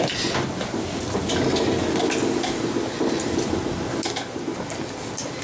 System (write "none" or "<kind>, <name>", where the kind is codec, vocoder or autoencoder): none